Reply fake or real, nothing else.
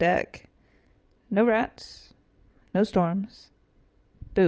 fake